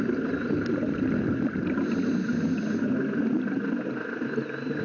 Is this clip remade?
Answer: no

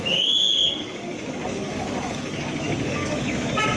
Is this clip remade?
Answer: yes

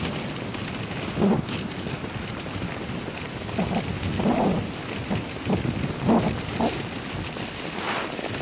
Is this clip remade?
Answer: no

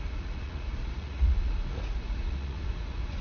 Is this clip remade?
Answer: yes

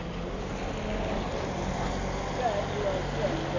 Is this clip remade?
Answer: no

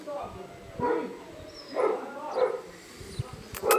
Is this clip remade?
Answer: no